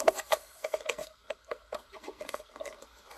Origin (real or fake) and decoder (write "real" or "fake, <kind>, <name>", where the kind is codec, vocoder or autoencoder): fake, codec, SNAC